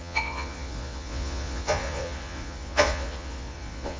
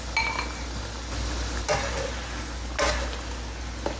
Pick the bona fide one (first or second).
second